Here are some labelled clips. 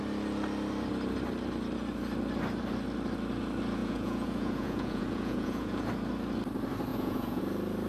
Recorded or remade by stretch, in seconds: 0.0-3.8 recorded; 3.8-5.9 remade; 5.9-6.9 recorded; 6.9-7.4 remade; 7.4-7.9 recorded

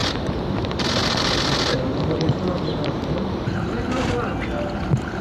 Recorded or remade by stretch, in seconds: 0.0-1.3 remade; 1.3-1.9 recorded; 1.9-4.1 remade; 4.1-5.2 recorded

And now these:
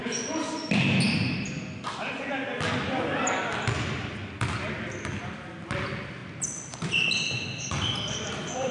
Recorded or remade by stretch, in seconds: 0.0-8.7 recorded

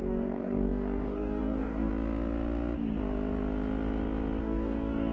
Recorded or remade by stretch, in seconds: 0.0-1.9 remade; 1.9-4.4 recorded; 4.4-5.1 remade